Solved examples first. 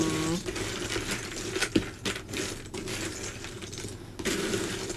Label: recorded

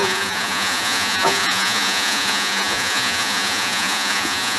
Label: remade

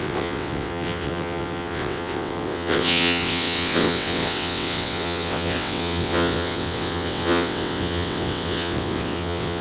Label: remade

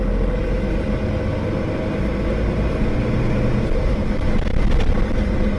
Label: recorded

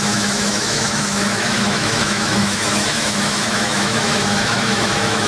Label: remade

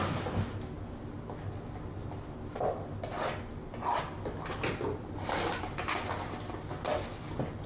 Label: recorded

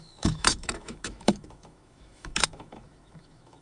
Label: remade